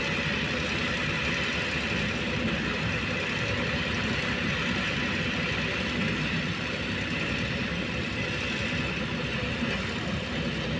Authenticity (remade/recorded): recorded